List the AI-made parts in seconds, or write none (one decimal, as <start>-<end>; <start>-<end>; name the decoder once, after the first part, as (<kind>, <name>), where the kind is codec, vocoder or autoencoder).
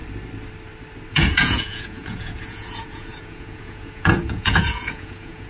1.1-5.5 (vocoder, Vocos)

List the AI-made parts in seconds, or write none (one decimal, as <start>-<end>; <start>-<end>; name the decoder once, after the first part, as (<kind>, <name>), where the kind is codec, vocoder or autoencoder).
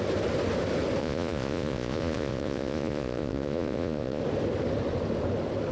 1.0-4.2 (vocoder, Vocos)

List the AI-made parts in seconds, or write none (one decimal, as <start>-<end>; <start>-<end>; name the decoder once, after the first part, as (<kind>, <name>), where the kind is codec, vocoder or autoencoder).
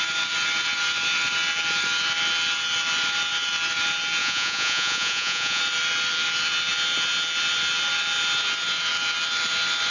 4.2-5.6 (vocoder, Vocos)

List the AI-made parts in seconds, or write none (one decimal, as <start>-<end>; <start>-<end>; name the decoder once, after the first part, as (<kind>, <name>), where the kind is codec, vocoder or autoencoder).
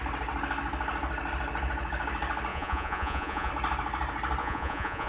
2.5-3.5 (vocoder, Vocos); 4.4-5.1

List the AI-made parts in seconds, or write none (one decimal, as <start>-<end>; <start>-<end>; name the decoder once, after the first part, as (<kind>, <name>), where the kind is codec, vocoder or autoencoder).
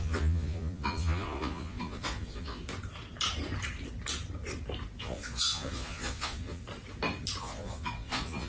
0.0-2.6 (vocoder, Vocos); 5.0-6.6; 7.4-8.5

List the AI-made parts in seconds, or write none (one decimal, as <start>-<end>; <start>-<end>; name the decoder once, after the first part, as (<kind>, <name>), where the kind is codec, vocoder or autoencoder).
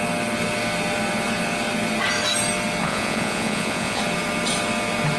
2.8-4.0 (vocoder, Vocos)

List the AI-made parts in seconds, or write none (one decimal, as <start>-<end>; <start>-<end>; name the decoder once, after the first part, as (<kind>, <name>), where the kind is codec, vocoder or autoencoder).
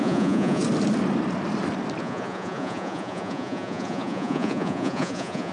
0.0-0.6 (vocoder, Vocos); 2.0-5.5